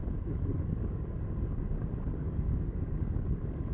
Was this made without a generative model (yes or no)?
no